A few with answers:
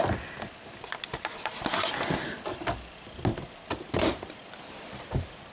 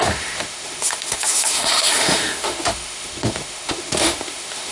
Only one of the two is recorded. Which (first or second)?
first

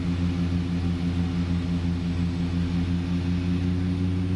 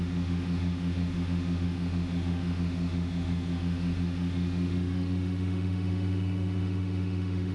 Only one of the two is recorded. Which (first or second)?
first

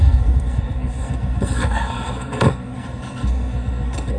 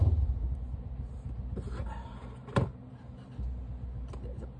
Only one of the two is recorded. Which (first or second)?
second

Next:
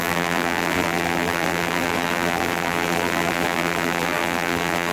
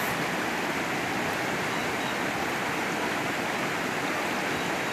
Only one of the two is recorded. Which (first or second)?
second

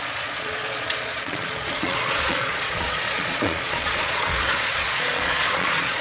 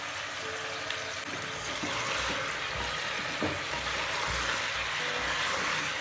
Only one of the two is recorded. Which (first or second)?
second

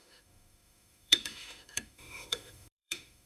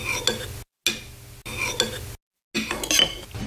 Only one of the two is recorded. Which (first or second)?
second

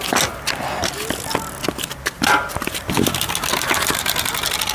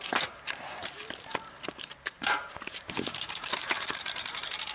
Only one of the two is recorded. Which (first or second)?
first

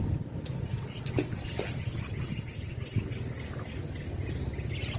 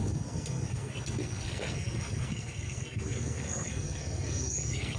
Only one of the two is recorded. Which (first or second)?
first